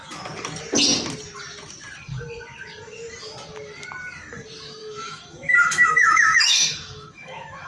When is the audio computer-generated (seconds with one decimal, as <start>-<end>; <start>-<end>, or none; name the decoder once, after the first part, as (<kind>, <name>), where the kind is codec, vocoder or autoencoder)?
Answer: 4.8-7.7 (autoencoder, DAC-VAE)